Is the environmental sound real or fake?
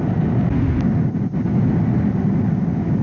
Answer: real